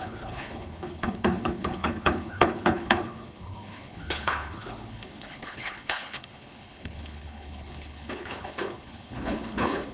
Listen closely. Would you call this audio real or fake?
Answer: fake